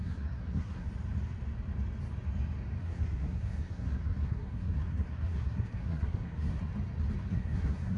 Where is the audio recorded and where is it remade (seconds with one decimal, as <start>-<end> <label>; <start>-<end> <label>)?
0.0-0.9 remade; 0.9-2.8 recorded; 2.8-6.7 remade; 6.7-7.3 recorded; 7.3-8.0 remade